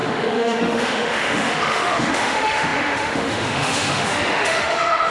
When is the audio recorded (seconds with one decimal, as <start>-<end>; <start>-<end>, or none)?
none